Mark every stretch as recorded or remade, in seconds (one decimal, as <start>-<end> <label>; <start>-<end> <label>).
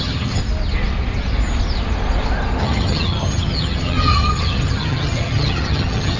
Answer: 0.0-0.4 remade; 0.4-2.6 recorded; 2.6-6.2 remade